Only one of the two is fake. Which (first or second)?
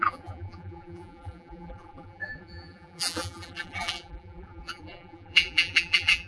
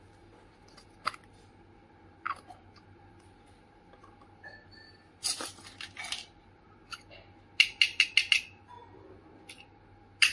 first